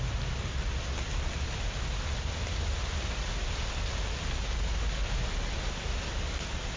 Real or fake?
real